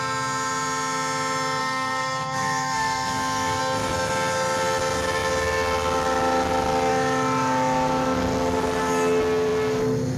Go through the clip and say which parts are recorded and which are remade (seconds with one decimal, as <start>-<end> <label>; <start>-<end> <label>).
0.0-1.6 recorded; 1.6-3.6 remade; 3.6-10.2 recorded